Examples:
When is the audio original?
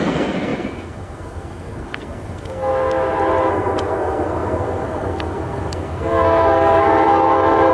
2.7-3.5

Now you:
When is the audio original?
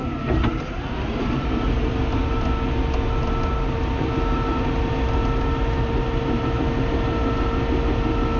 1.9-8.4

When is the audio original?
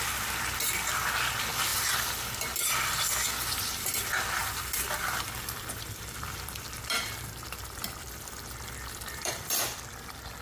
0.0-4.4; 9.6-10.4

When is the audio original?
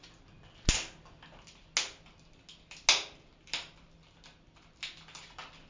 0.0-5.7